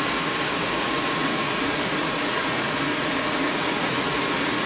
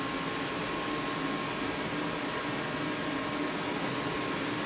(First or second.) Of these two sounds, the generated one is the first